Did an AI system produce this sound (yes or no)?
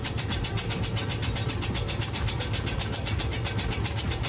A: no